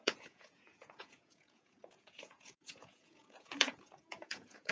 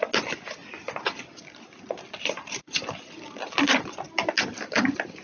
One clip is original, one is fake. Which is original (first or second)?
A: second